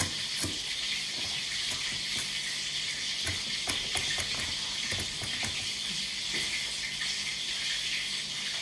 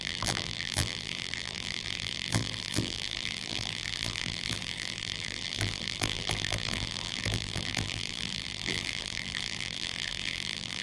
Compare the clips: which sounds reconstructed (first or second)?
second